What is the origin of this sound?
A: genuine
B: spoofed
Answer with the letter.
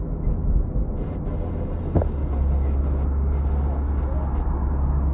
A